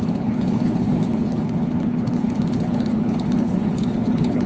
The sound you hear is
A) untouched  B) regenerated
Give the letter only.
B